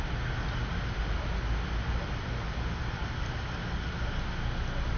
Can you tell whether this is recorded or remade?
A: recorded